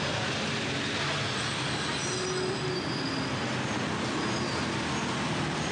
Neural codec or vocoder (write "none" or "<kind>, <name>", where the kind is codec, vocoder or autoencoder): none